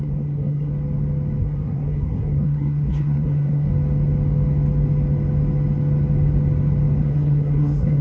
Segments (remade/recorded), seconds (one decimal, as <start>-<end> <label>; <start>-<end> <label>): 0.0-0.7 remade; 0.7-1.4 recorded; 1.4-3.7 remade; 3.7-7.0 recorded; 7.0-8.0 remade